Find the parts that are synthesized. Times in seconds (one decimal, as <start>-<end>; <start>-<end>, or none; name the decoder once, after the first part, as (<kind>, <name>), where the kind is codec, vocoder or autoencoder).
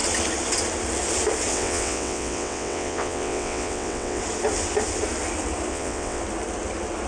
1.5-4.2 (vocoder, WaveNeXt); 5.7-6.2